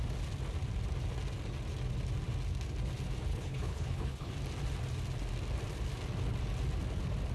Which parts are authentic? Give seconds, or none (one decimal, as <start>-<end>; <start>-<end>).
0.0-3.3; 4.3-7.3